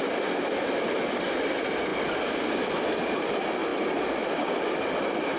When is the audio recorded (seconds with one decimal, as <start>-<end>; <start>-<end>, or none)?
0.0-5.4